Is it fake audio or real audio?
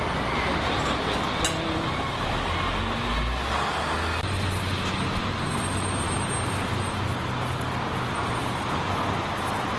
real